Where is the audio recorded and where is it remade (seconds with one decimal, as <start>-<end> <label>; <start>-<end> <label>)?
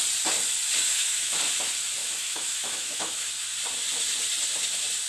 0.0-0.9 recorded; 0.9-1.4 remade; 1.4-2.0 recorded; 2.0-3.3 remade; 3.3-5.1 recorded